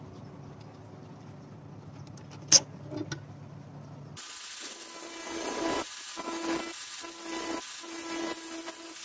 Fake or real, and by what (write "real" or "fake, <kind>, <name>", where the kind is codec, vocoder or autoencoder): real